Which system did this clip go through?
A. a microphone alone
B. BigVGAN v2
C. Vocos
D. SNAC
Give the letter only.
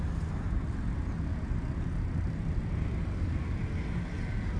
A